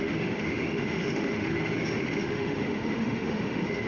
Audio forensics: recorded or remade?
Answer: remade